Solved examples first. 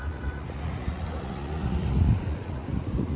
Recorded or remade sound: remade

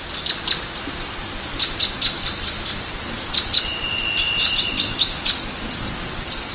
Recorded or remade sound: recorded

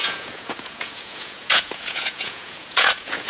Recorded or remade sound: remade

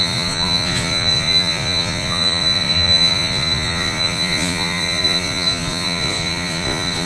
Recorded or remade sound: remade